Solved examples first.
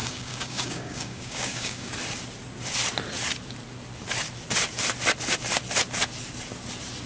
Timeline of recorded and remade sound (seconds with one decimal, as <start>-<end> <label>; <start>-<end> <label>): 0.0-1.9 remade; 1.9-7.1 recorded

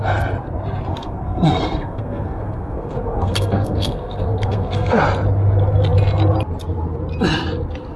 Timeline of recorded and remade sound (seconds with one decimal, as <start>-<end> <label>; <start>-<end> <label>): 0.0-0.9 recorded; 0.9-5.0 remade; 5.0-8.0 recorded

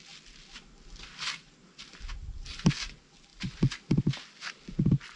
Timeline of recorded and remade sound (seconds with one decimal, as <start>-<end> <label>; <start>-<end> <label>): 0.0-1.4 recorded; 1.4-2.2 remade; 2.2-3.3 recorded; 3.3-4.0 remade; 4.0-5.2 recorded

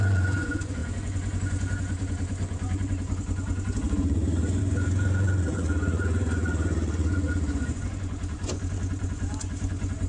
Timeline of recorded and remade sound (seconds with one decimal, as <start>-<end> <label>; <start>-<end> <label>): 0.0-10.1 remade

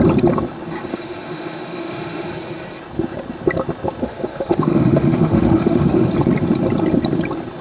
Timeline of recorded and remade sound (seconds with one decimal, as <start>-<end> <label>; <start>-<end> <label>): 0.0-0.9 recorded; 0.9-2.3 remade; 2.3-4.0 recorded; 4.0-6.1 remade; 6.1-7.6 recorded

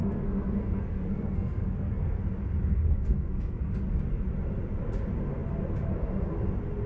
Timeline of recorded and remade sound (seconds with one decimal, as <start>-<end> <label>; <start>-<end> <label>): 0.0-2.2 remade; 2.2-2.6 recorded; 2.6-3.8 remade; 3.8-6.9 recorded

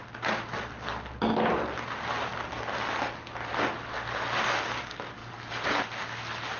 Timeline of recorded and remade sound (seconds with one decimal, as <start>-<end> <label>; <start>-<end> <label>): 0.0-6.6 recorded

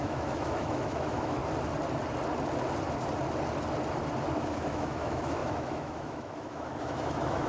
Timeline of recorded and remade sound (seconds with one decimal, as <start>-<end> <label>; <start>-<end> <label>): 0.0-1.4 remade; 1.4-4.4 recorded; 4.4-7.5 remade